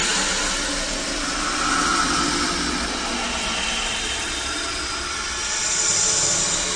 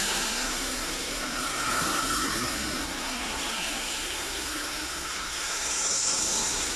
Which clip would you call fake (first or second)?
second